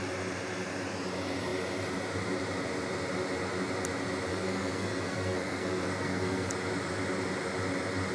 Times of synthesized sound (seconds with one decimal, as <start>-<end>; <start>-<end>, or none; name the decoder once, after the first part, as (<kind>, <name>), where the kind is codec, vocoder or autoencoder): 4.3-6.5 (codec, SNAC)